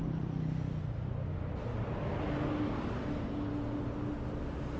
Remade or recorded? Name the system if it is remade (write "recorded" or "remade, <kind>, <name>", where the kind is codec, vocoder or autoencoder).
recorded